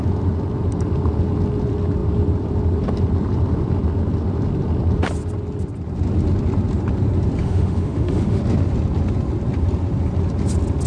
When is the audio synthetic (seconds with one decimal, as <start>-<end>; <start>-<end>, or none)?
7.4-8.4